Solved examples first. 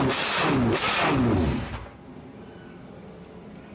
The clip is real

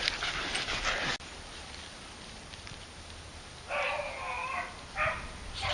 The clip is real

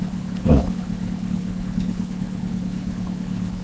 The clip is fake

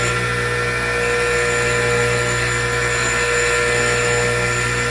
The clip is real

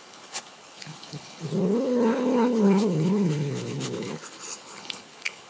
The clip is fake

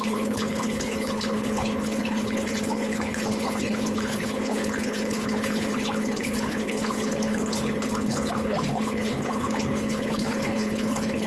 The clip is fake